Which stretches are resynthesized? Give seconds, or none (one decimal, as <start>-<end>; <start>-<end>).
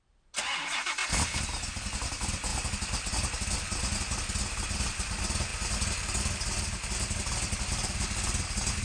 none